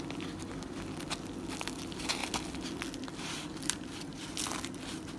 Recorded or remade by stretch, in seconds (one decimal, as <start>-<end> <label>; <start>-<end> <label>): 0.0-5.2 recorded